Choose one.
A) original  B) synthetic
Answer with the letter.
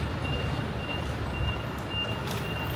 B